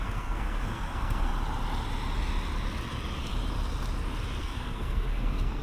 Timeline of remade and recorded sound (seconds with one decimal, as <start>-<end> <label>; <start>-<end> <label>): 0.0-1.3 remade; 1.3-4.4 recorded; 4.4-5.6 remade